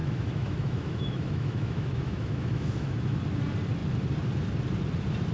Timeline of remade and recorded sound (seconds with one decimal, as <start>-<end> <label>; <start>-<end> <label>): 0.0-3.2 remade; 3.2-5.3 recorded